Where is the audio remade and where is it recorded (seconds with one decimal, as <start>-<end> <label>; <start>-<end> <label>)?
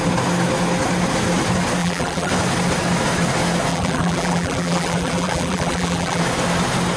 0.0-1.8 recorded; 1.8-2.3 remade; 2.3-3.7 recorded; 3.7-6.2 remade; 6.2-7.0 recorded